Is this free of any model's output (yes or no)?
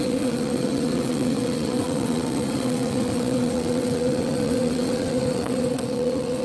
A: no